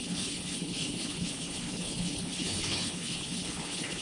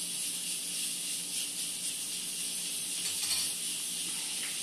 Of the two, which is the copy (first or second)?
first